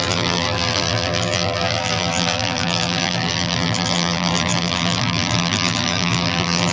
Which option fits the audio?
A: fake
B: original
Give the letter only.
A